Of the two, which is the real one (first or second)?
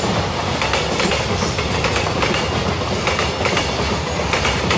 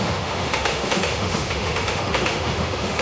first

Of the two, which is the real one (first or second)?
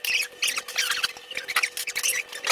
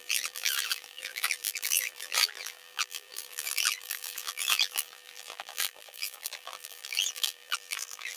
first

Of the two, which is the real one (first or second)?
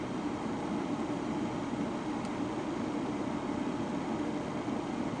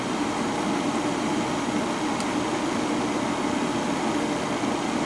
second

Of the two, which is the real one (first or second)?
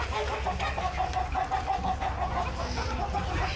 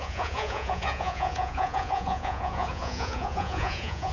first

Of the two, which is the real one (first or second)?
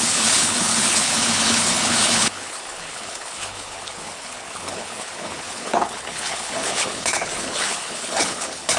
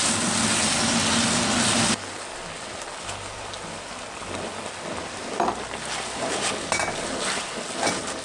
second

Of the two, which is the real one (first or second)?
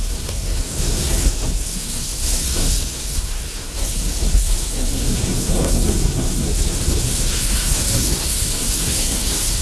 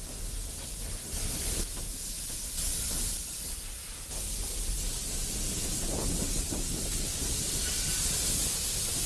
second